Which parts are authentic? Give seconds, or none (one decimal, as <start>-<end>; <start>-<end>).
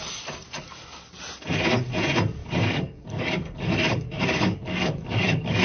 0.0-2.4